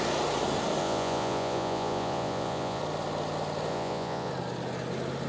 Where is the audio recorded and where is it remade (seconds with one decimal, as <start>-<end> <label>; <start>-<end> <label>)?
0.0-0.8 recorded; 0.8-2.8 remade; 2.8-3.7 recorded; 3.7-4.3 remade; 4.3-5.3 recorded